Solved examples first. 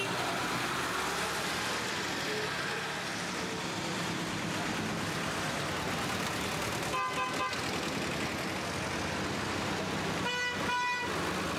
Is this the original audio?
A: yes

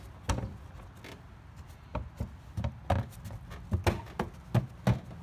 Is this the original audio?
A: yes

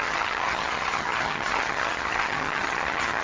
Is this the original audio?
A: no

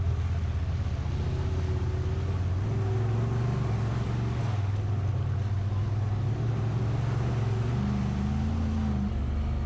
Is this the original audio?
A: yes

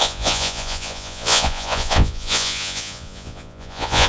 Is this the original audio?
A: no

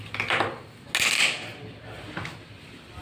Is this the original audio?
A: yes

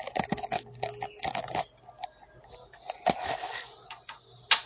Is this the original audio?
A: yes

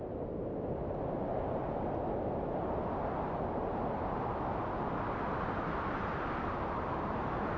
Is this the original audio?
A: yes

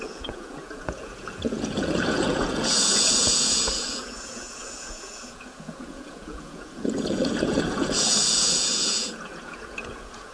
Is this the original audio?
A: no